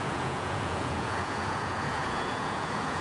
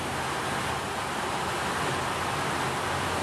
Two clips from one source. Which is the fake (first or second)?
first